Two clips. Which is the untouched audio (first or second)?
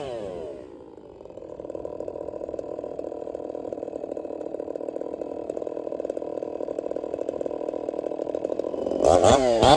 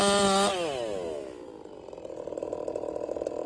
second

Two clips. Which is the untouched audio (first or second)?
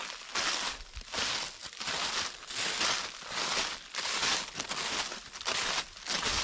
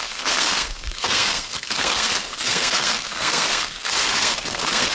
first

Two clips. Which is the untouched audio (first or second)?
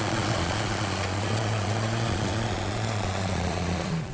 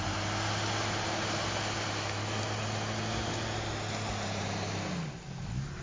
second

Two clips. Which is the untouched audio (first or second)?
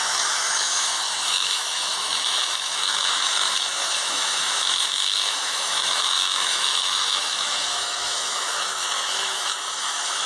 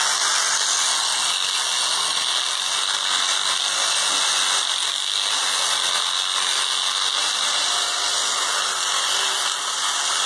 second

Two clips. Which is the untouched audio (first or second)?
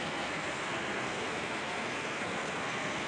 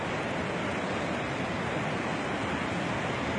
second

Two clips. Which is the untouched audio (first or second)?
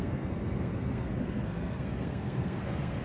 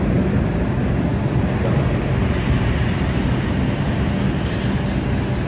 second